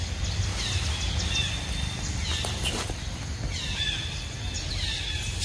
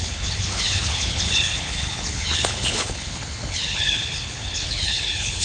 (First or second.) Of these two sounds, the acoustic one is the first